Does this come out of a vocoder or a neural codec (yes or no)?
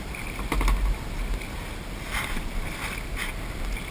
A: no